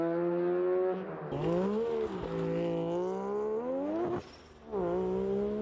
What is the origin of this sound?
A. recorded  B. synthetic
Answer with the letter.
A